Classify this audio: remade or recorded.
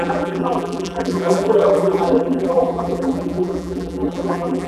remade